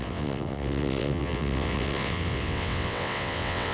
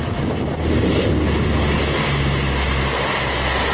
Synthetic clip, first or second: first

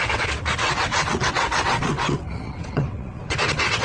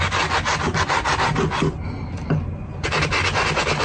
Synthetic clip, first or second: first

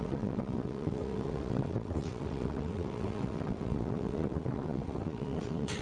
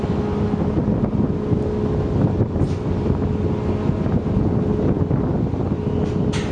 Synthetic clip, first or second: first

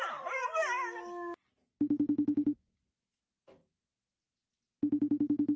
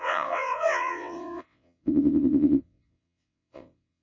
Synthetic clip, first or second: second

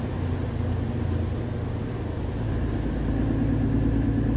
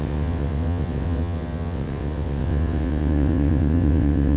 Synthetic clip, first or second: second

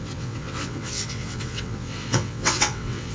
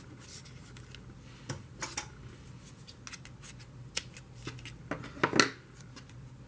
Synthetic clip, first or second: first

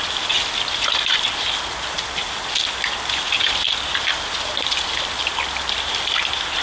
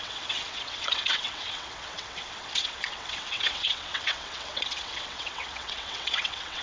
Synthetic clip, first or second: second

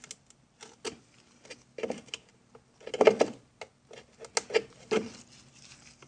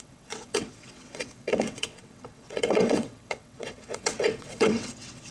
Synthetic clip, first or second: second